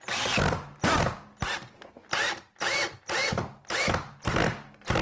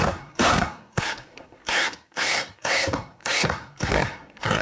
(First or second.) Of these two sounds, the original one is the first